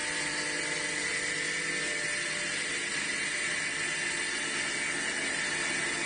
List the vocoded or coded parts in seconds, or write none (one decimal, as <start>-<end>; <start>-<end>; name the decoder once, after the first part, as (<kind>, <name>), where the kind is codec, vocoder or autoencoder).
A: none